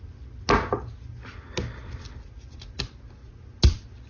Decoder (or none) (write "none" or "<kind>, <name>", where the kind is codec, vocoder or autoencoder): none